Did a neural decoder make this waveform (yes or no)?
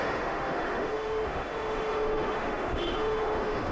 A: yes